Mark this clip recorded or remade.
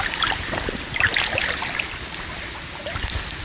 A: recorded